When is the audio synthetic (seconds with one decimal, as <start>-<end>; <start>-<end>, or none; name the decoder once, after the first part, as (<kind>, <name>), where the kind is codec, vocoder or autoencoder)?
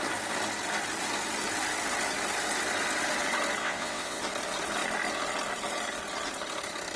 3.6-4.2 (vocoder, WaveNeXt)